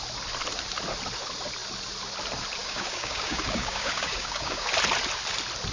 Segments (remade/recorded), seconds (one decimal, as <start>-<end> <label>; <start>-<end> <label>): 0.0-2.6 recorded; 2.6-4.7 remade; 4.7-5.7 recorded